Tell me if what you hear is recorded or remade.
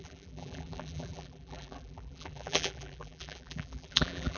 remade